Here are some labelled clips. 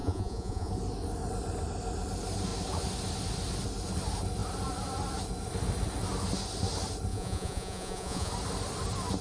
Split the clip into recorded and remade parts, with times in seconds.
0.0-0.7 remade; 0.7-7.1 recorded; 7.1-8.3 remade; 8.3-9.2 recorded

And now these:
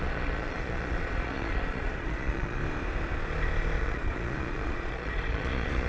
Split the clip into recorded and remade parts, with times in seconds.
0.0-2.6 remade; 2.6-3.8 recorded; 3.8-5.9 remade

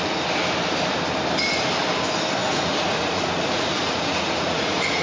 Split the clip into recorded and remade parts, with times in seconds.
0.0-2.4 recorded; 2.4-5.0 remade

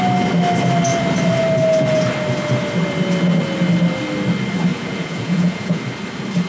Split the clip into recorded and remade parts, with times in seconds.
0.0-4.7 recorded; 4.7-5.8 remade; 5.8-6.5 recorded